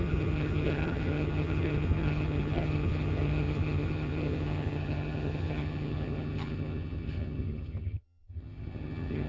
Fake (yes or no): yes